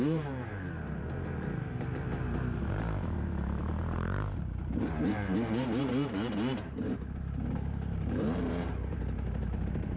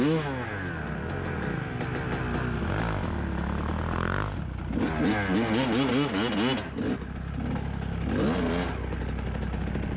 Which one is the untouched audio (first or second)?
second